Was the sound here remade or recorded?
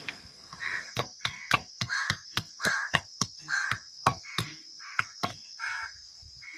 remade